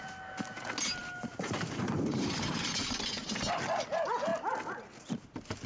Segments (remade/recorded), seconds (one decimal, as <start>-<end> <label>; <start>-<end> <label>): 0.0-1.0 recorded; 1.0-2.6 remade; 2.6-5.7 recorded